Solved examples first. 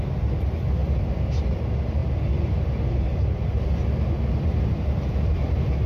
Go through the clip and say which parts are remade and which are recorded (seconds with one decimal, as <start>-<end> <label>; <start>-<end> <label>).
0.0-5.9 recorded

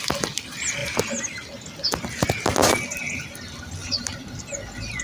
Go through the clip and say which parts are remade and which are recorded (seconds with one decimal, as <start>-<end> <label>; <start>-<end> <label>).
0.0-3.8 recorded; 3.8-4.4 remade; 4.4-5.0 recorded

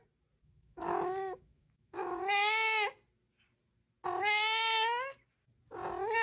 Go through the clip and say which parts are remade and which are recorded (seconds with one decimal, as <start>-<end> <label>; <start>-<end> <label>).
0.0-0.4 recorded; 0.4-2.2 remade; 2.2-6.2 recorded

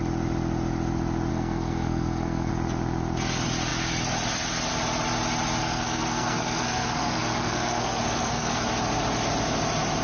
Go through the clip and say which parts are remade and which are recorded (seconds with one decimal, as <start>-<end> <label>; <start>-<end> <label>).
0.0-1.3 recorded; 1.3-2.5 remade; 2.5-5.6 recorded; 5.6-8.6 remade; 8.6-10.0 recorded

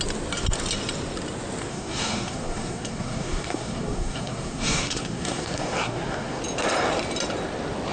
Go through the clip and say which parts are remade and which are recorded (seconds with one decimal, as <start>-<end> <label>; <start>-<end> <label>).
0.0-1.7 recorded; 1.7-6.4 remade; 6.4-7.9 recorded

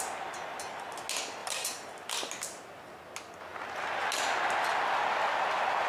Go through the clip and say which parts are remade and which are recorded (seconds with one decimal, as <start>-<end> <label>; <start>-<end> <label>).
0.0-1.4 recorded; 1.4-3.0 remade; 3.0-5.9 recorded

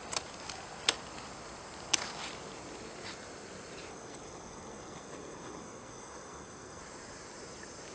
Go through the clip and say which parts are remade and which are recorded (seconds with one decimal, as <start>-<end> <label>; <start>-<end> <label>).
0.0-3.9 recorded; 3.9-6.8 remade; 6.8-7.9 recorded

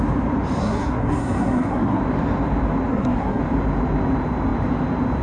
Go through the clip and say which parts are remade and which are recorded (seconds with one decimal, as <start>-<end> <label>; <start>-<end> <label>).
0.0-0.6 recorded; 0.6-2.0 remade; 2.0-2.9 recorded; 2.9-3.4 remade; 3.4-5.2 recorded